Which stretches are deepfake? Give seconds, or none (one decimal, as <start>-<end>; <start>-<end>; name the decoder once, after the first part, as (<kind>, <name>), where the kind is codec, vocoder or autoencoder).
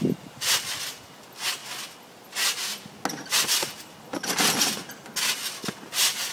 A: none